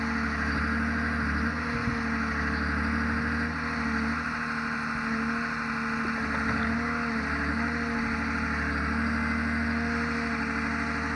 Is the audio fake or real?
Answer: real